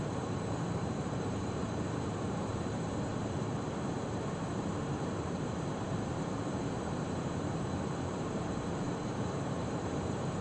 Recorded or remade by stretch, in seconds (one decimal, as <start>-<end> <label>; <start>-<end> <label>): 0.0-3.1 remade; 3.1-4.5 recorded; 4.5-10.4 remade